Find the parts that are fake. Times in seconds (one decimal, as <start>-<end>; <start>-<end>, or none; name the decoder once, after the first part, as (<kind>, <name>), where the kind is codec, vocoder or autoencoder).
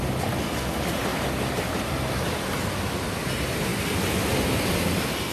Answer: none